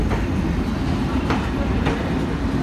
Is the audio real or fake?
real